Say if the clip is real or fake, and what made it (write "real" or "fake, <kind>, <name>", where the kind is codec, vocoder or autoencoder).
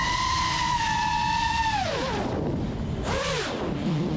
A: fake, vocoder, BigVGAN v2